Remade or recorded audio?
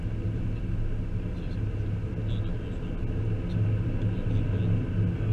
recorded